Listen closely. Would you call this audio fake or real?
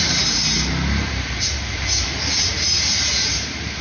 fake